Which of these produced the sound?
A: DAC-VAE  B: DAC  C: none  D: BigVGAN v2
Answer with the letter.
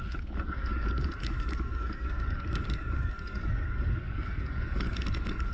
B